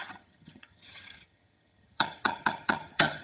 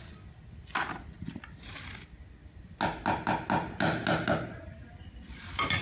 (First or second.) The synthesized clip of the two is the first